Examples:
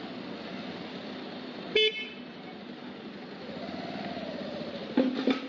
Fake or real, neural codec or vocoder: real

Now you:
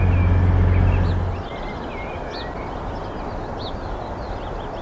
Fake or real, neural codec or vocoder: real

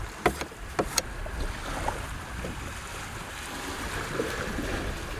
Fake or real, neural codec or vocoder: real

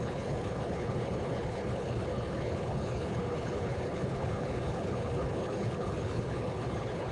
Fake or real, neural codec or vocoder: fake, codec, HILCodec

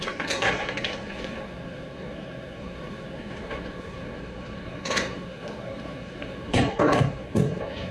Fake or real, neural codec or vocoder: fake, codec, SNAC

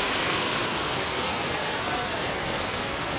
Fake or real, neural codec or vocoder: fake, codec, SNAC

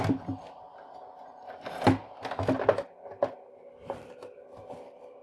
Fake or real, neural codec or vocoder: real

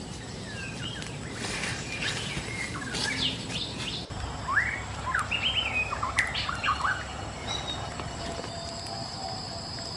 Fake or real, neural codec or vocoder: real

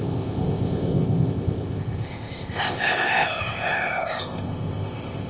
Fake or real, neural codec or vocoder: fake, codec, ZipCodec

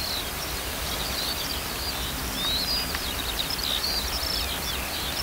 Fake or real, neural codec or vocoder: real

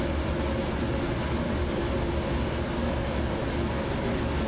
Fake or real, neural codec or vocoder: real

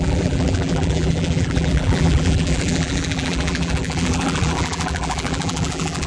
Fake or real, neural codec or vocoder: fake, vocoder, BigVGAN v2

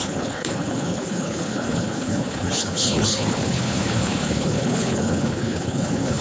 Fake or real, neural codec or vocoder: fake, codec, HILCodec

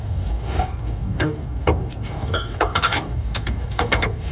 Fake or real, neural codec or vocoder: fake, codec, DAC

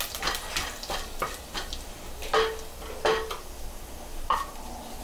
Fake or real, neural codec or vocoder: real